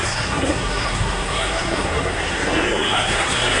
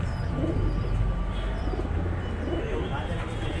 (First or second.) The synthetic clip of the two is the first